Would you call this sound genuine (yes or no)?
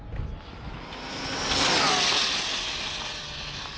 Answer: yes